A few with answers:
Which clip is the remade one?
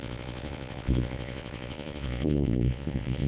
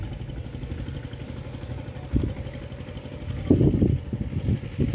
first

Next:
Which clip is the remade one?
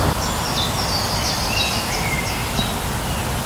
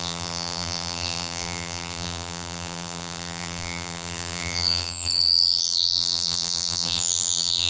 second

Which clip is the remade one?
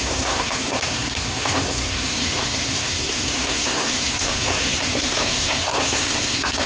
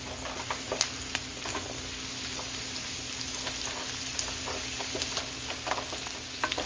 first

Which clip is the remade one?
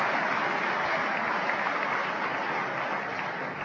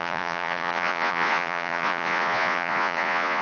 second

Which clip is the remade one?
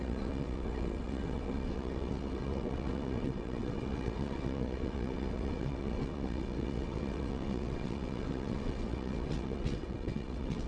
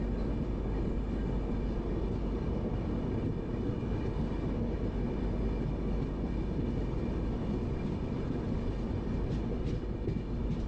first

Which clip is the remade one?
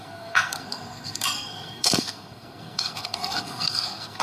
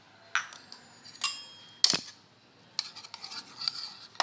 first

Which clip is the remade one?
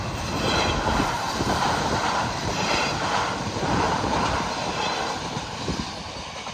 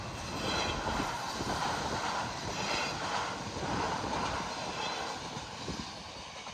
first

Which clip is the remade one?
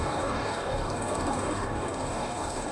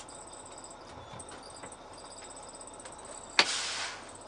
first